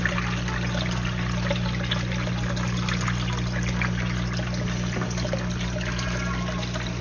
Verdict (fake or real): real